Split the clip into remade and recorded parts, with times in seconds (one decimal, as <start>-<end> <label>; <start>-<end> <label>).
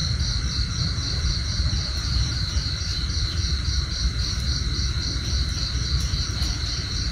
0.0-2.4 remade; 2.4-2.9 recorded; 2.9-3.8 remade; 3.8-7.1 recorded